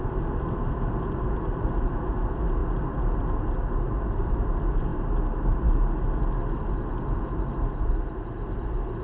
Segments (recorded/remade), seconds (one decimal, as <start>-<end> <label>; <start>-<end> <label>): 0.0-9.0 recorded